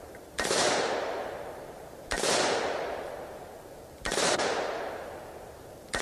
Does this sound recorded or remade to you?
remade